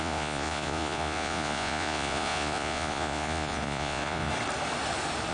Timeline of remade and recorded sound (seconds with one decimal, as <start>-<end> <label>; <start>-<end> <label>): 0.0-4.3 remade; 4.3-5.3 recorded